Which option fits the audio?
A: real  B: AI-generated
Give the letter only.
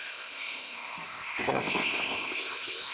B